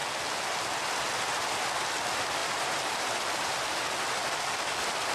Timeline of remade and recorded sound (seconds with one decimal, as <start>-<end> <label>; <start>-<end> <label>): 0.0-5.1 recorded